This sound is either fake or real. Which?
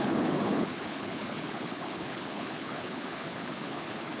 fake